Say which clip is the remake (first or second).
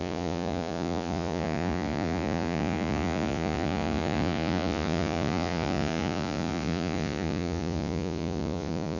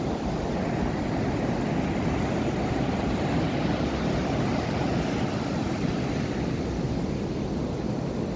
first